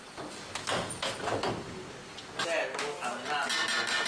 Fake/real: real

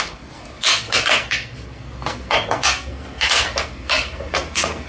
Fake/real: fake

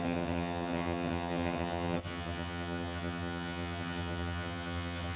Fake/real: fake